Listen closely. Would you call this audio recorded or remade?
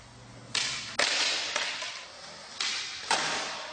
recorded